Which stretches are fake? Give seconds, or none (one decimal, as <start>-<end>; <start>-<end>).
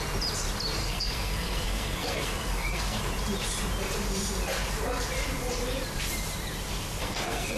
0.8-3.0; 7.0-7.6